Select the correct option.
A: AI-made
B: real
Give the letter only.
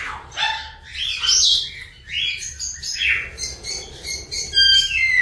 B